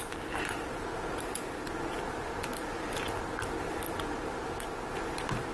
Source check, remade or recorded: recorded